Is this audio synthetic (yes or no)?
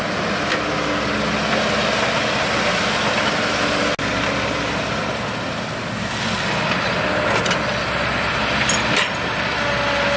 no